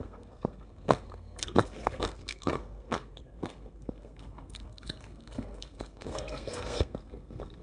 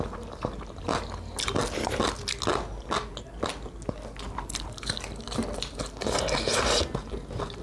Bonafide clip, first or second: second